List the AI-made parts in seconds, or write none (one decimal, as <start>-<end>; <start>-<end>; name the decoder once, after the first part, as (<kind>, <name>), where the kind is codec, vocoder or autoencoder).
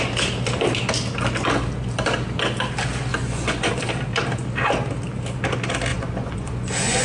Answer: 3.1-3.7 (vocoder, Vocos); 5.9-7.0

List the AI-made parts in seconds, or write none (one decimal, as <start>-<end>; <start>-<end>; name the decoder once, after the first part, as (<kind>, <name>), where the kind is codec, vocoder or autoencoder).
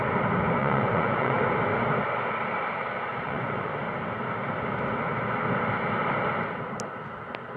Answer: 0.6-1.4 (vocoder, Vocos); 3.1-3.7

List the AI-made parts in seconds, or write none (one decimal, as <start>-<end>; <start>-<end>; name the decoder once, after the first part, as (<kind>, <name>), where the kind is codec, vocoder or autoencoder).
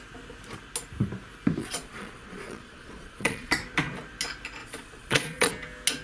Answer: 1.6-3.5 (vocoder, Vocos); 4.6-5.5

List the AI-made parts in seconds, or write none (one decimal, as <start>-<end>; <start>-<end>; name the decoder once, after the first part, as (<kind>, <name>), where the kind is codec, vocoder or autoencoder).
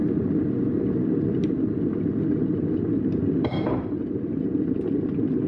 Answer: none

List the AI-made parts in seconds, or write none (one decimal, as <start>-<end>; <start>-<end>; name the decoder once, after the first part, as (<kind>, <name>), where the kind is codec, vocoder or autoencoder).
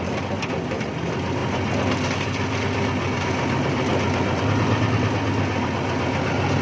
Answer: none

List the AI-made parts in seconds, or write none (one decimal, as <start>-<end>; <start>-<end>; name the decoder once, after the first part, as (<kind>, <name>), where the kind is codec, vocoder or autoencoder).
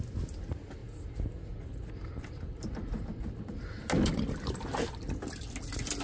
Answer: none